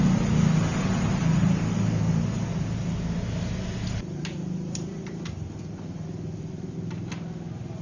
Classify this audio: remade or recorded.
recorded